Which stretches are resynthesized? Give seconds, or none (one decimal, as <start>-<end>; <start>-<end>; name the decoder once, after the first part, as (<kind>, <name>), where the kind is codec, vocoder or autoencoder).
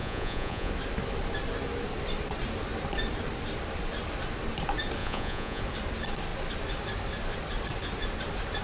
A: 0.0-0.7 (vocoder, Vocos); 5.0-5.6